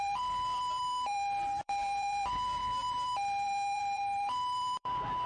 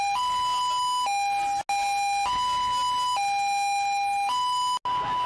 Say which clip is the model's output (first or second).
first